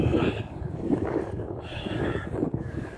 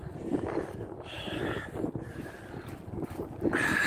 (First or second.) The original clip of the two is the second